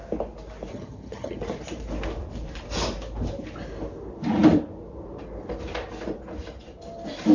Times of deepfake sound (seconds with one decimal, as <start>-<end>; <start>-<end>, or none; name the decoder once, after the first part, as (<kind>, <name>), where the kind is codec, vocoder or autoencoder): 0.7-1.4 (vocoder, HiFi-GAN)